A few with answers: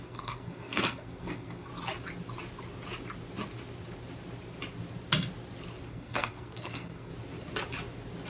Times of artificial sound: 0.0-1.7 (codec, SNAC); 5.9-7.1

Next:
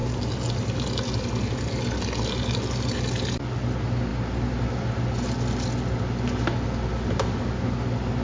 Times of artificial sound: none

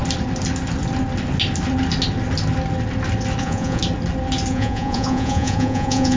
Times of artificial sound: 3.4-3.8 (vocoder, Vocos); 4.5-6.2

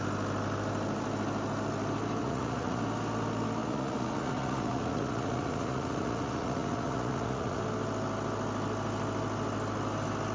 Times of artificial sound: 2.2-2.8 (vocoder, Vocos); 3.6-7.6